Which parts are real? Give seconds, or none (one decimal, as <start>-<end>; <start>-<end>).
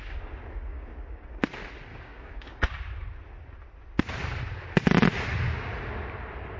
0.0-0.7; 1.4-1.9; 2.7-6.6